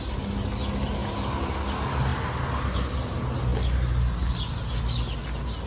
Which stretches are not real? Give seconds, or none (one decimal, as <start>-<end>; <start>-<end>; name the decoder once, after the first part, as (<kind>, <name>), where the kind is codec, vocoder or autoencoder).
none